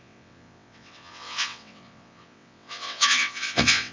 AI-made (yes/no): yes